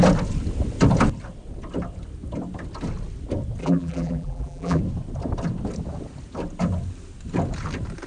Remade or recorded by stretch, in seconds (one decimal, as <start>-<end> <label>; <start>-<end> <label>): 0.0-3.6 recorded; 3.6-4.8 remade; 4.8-8.1 recorded

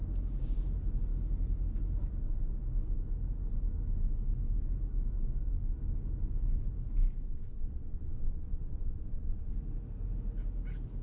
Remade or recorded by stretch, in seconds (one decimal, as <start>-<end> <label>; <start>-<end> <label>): 0.0-7.3 recorded; 7.3-9.5 remade; 9.5-11.0 recorded

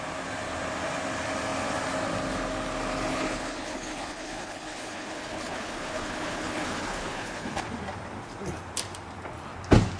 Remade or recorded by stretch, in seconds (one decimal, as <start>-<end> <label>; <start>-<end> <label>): 0.0-3.1 recorded; 3.1-7.6 remade; 7.6-10.0 recorded

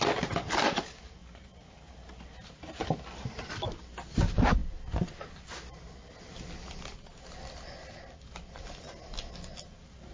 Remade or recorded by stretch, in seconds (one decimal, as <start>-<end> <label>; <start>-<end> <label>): 0.0-10.1 recorded